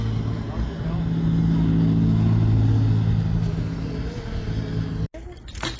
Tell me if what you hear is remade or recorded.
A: recorded